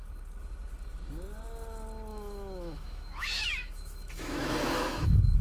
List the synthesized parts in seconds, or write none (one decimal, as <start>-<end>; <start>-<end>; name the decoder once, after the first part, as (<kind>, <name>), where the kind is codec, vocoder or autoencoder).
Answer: 2.1-5.4 (autoencoder, DAC-VAE)